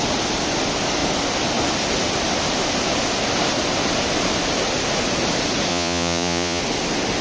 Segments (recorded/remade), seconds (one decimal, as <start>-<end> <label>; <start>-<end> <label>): 0.0-5.7 recorded; 5.7-6.6 remade; 6.6-7.2 recorded